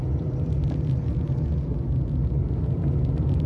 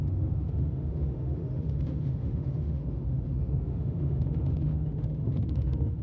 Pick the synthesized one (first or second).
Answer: second